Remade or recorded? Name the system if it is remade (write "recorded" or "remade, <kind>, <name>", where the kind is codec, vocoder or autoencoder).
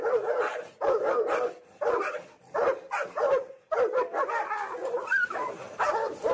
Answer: recorded